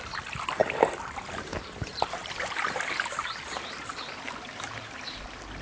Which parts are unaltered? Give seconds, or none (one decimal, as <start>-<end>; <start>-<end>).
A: 0.6-1.6; 2.2-3.9

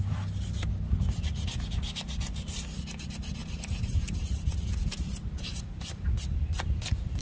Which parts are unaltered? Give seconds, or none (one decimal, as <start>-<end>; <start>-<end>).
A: 0.0-3.4; 6.1-7.2

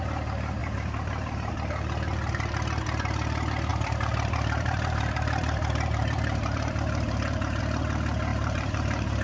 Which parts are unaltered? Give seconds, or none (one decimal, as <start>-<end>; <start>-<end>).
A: 0.0-0.6; 1.5-3.7; 7.6-8.3